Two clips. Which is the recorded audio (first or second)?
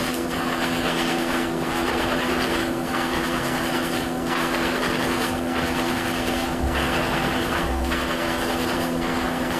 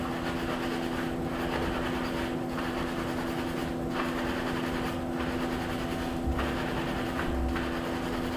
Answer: second